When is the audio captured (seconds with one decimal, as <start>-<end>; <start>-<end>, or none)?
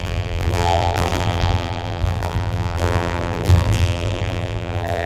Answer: none